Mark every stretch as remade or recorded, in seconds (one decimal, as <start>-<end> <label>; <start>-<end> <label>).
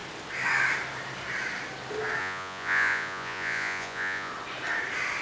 0.0-2.2 recorded; 2.2-4.3 remade; 4.3-5.2 recorded